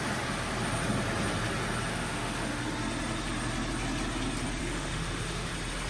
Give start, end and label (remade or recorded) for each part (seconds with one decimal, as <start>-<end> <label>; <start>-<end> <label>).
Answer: 0.0-1.9 recorded; 1.9-2.6 remade; 2.6-4.6 recorded; 4.6-5.5 remade; 5.5-5.9 recorded